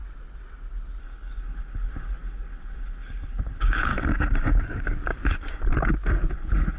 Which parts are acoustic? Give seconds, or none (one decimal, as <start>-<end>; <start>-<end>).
0.0-1.0; 3.9-6.3

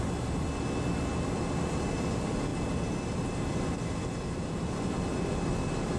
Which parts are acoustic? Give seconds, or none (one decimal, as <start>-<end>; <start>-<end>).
0.0-6.0